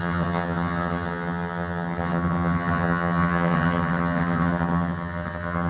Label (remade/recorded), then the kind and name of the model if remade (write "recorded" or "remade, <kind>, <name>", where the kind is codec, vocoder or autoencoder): remade, vocoder, HiFi-GAN